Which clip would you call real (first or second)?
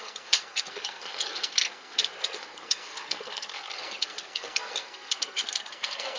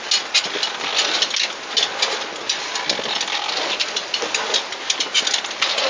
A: second